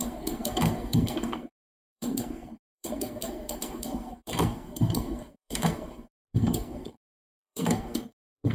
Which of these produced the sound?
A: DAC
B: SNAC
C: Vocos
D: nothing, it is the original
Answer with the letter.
B